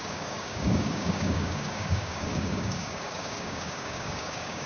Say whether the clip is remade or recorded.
remade